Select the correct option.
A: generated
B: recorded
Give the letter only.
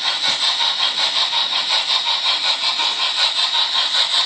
B